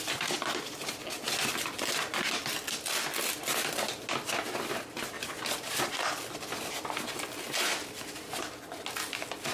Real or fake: real